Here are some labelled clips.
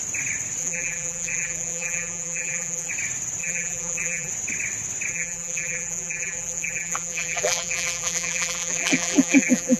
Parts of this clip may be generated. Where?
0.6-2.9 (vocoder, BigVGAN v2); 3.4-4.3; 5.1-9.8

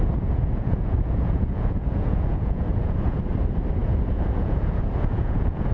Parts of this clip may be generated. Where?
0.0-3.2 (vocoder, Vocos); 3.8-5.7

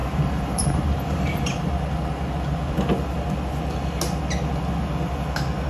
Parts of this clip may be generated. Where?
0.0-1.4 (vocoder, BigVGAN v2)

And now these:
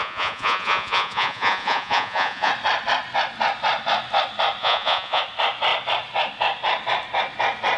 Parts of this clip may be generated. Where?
0.0-2.5 (vocoder, Vocos); 4.6-5.2